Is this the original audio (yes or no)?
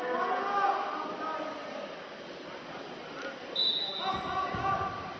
yes